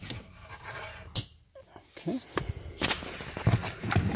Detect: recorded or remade recorded